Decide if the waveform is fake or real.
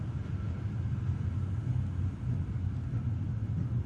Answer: real